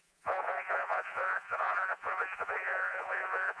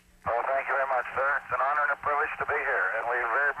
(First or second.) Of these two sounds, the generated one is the first